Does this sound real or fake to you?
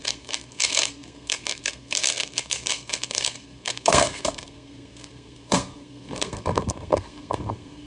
fake